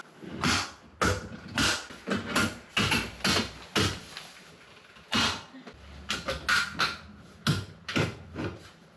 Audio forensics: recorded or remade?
recorded